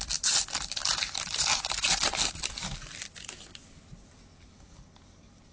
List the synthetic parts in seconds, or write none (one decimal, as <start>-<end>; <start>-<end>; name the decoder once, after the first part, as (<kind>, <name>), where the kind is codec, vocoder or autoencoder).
none